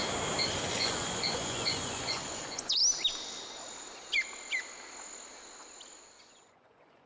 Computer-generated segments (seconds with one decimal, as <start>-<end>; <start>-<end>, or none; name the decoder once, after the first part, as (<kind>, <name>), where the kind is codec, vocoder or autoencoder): 0.7-2.8 (vocoder, Vocos); 6.2-7.1